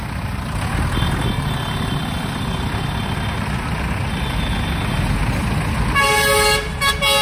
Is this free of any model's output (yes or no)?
yes